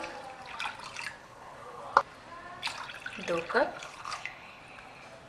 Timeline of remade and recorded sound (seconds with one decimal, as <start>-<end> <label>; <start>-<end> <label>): 0.0-1.2 recorded; 1.2-1.8 remade; 1.8-3.5 recorded; 3.5-4.6 remade; 4.6-5.3 recorded